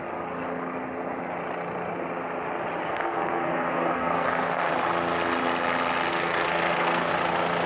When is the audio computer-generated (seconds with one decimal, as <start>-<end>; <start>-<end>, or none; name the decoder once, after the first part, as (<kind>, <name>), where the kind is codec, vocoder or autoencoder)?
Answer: 2.8-4.7 (codec, SNAC); 6.1-7.1